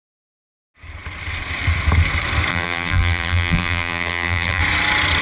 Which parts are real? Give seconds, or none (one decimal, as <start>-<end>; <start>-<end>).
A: 0.0-2.5; 4.6-5.2